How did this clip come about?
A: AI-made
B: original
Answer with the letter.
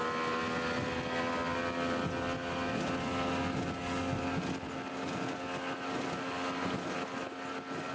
B